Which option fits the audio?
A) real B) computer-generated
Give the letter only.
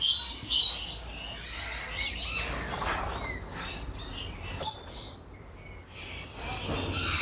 A